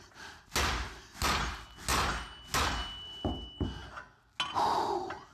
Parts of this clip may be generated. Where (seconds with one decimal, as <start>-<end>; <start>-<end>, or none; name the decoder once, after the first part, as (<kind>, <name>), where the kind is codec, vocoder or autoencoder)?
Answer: none

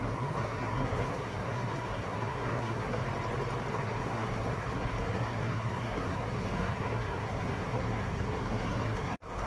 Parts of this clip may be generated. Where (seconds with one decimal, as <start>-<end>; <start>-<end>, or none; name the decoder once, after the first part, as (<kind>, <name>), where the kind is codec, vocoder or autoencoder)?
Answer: 0.0-3.0 (codec, SNAC); 3.7-9.5

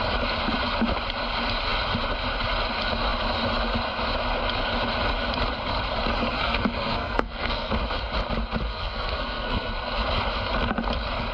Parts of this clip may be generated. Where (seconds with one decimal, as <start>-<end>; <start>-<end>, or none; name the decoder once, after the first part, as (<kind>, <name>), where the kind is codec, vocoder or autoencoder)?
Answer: 6.4-7.7 (codec, SNAC); 8.7-10.0

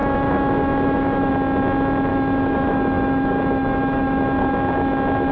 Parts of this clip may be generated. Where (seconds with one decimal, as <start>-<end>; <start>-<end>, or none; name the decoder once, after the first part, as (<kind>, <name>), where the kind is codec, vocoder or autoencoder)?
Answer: 0.0-1.3 (autoencoder, DAC-VAE); 2.1-4.5

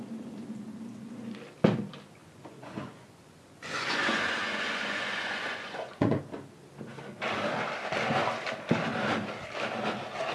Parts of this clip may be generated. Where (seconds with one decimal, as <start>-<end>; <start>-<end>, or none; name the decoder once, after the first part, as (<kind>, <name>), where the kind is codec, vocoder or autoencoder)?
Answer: 2.2-6.2 (vocoder, Vocos)

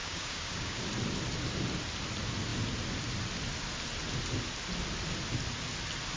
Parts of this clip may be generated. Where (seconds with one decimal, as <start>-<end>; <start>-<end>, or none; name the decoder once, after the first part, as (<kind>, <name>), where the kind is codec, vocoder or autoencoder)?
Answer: 0.0-0.8 (codec, DAC)